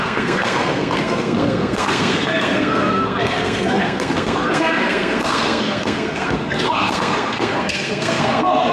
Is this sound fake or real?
fake